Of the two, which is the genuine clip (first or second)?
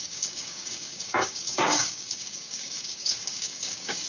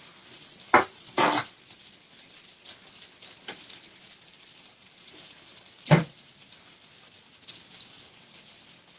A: second